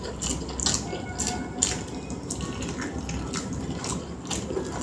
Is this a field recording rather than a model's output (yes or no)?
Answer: yes